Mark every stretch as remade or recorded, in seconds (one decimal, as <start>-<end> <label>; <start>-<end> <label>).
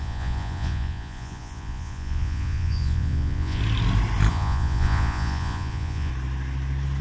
0.0-3.6 remade; 3.6-4.3 recorded; 4.3-6.1 remade; 6.1-7.0 recorded